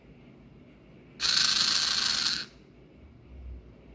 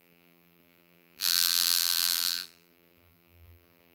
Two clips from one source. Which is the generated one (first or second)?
second